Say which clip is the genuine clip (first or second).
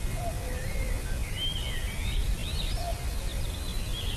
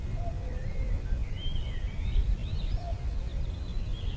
first